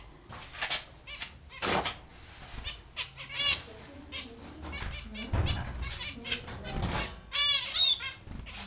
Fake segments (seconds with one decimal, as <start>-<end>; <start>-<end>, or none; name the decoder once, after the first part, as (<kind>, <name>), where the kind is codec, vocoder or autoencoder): none